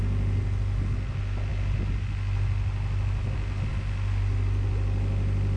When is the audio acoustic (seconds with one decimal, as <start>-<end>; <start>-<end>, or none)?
0.0-5.6